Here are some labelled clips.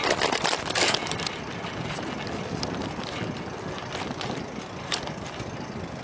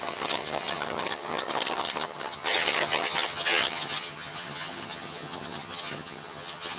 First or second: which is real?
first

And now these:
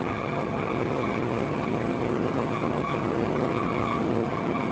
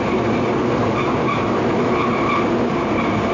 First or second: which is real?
second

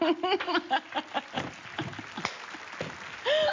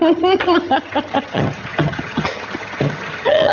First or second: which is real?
first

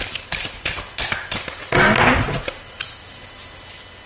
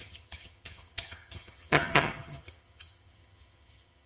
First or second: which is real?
first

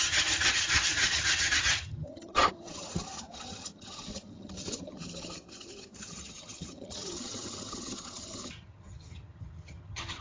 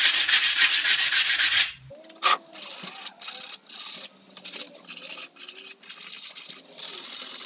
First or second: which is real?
second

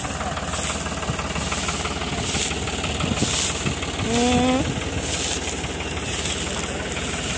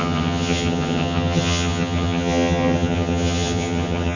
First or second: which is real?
first